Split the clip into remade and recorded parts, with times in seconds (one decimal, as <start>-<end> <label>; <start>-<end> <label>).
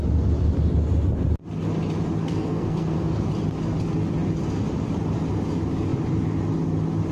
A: 0.0-2.2 recorded; 2.2-3.3 remade; 3.3-7.1 recorded